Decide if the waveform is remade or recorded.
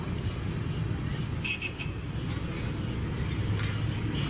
recorded